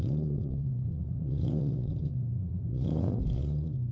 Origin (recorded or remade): remade